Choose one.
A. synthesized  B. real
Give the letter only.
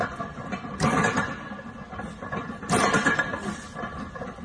B